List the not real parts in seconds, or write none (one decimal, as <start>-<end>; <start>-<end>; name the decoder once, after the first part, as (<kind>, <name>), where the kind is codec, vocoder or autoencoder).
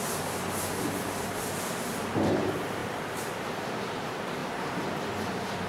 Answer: 2.8-3.7 (vocoder, BigVGAN v2)